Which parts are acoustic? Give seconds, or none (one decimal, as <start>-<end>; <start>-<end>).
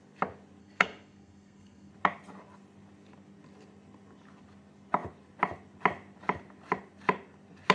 0.0-0.6; 1.9-7.7